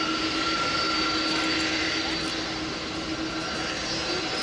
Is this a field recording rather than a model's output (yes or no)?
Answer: yes